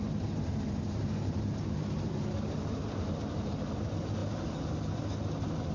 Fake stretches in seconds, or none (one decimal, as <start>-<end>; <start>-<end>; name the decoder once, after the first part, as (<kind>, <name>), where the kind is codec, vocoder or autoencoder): 1.0-1.6 (vocoder, BigVGAN v2); 2.8-3.5